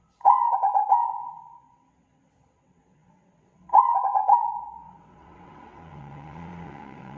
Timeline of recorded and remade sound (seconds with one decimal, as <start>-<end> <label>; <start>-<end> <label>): 0.0-7.2 remade